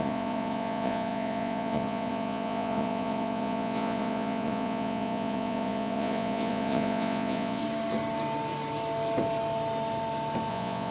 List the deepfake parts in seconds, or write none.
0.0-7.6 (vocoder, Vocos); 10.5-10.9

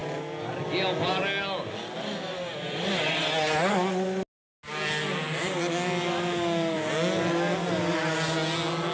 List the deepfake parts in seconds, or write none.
none

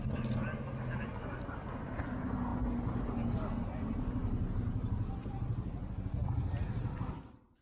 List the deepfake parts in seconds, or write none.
none